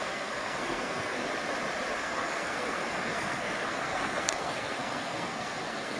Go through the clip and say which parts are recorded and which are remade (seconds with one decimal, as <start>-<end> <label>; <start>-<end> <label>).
0.0-1.2 remade; 1.2-2.0 recorded; 2.0-6.0 remade